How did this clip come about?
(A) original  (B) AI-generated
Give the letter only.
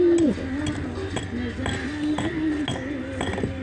A